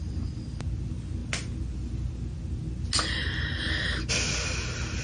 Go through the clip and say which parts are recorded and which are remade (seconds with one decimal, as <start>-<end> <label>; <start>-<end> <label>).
0.0-5.0 recorded